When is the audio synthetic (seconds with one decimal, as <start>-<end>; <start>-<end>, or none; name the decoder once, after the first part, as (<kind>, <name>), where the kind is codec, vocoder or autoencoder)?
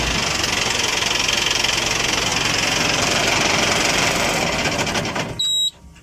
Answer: none